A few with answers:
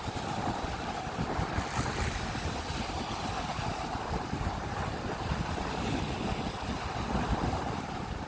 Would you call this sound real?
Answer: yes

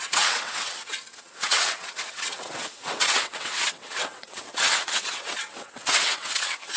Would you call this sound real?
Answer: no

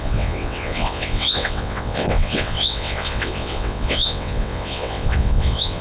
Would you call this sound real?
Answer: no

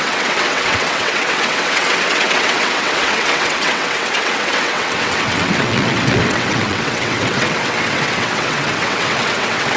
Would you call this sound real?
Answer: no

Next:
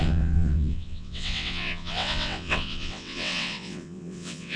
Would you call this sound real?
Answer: no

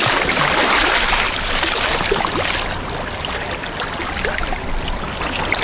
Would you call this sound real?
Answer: yes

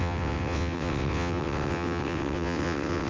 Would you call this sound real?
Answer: no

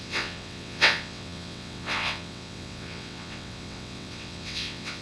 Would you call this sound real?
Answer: no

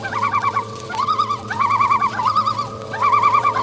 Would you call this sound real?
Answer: no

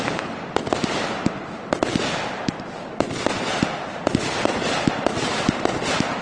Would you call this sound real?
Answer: yes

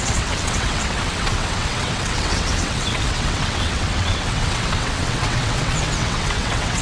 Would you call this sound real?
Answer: no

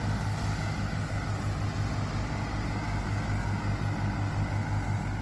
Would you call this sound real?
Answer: yes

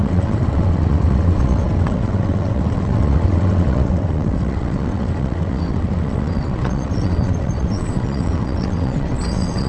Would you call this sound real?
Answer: no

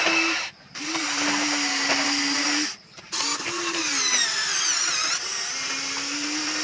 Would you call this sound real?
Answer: yes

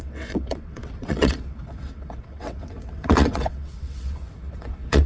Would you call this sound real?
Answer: no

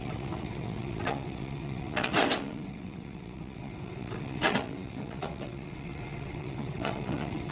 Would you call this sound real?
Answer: no